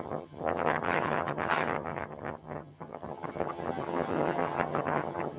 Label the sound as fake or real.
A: fake